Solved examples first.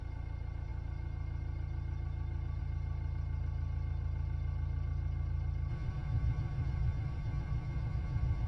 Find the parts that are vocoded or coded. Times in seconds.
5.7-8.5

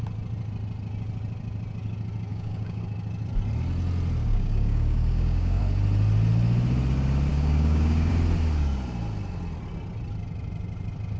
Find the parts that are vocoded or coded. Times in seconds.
2.3-2.8; 4.2-5.6; 7.3-8.1

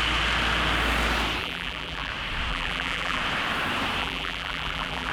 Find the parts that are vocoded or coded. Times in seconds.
1.4-2.1; 2.5-3.2; 4.0-5.1

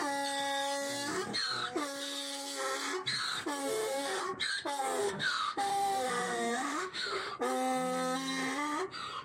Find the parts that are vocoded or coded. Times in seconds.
3.6-4.2; 5.0-7.3